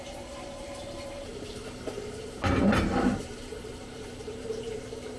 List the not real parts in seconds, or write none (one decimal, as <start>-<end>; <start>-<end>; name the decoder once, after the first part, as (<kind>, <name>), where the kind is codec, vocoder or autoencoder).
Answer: 0.0-5.2 (vocoder, BigVGAN v2)